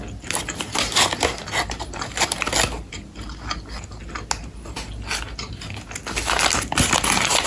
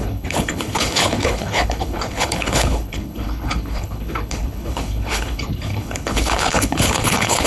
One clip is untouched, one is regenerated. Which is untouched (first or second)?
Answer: first